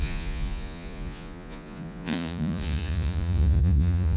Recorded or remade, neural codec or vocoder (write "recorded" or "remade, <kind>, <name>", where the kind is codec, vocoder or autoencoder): remade, vocoder, Vocos